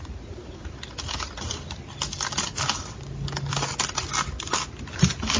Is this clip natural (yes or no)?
yes